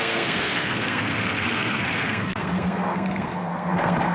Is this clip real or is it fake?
fake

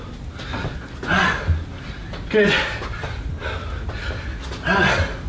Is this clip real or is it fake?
real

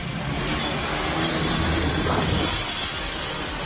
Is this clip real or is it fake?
real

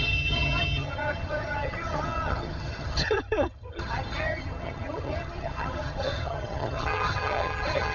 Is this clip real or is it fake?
fake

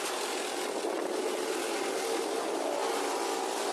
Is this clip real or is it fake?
real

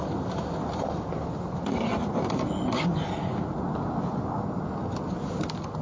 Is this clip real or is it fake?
real